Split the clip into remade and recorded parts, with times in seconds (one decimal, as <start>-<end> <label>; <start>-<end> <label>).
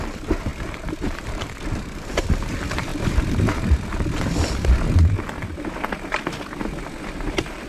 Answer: 0.0-2.9 remade; 2.9-7.0 recorded; 7.0-7.7 remade